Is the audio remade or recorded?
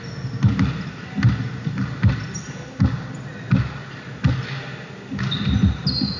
recorded